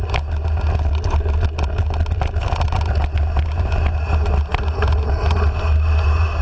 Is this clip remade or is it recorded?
recorded